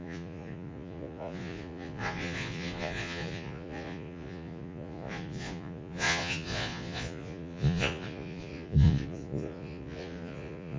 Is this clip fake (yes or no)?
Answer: yes